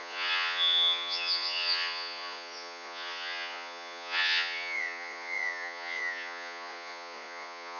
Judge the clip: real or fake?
fake